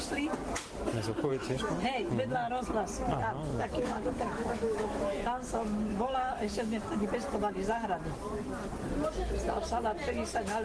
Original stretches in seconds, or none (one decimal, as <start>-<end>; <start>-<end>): 0.0-1.3; 2.1-3.5; 7.1-10.6